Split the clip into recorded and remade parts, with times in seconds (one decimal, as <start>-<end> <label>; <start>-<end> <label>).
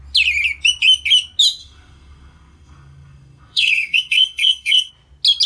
0.0-1.6 recorded; 1.6-4.9 remade; 4.9-5.5 recorded